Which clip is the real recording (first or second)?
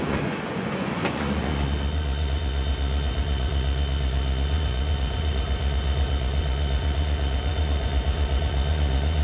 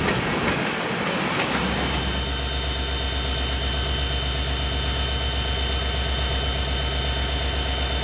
second